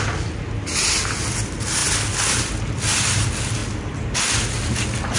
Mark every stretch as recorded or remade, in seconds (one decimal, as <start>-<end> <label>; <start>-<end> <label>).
0.0-5.2 recorded